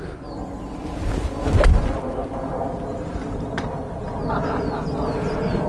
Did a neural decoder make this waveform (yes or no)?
no